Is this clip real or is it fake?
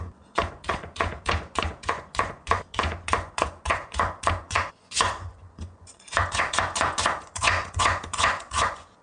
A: fake